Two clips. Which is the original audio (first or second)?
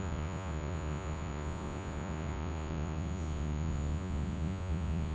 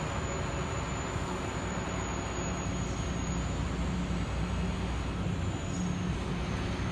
second